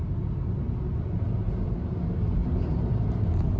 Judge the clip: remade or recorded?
recorded